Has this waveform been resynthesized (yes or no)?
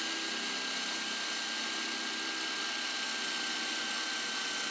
no